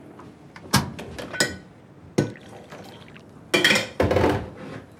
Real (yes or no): yes